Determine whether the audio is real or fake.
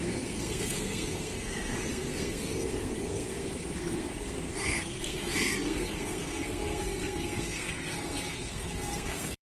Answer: fake